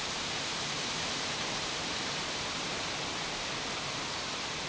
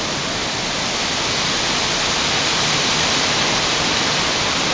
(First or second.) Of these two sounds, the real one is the second